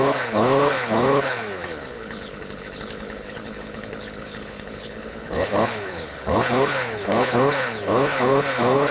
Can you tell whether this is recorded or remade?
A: remade